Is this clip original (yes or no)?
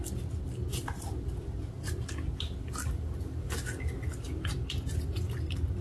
yes